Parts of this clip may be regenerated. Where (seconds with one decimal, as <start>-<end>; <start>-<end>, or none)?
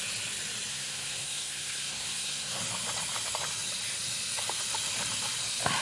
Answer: 0.7-2.6